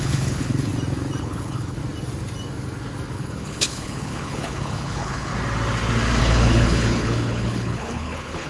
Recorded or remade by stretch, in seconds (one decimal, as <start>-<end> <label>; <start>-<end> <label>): 0.0-0.7 remade; 0.7-1.2 recorded; 1.2-1.8 remade; 1.8-3.1 recorded; 3.1-5.3 remade; 5.3-6.2 recorded; 6.2-8.5 remade